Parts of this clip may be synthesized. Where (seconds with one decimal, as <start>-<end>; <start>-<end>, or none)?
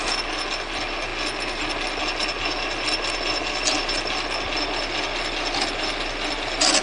none